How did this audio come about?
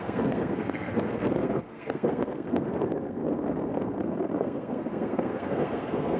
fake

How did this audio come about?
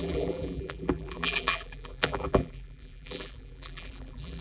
fake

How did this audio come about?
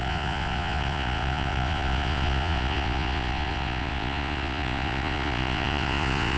fake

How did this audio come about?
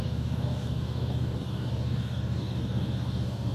fake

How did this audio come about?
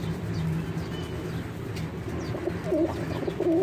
real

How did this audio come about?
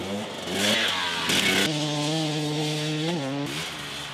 real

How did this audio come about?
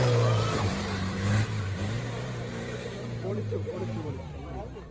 fake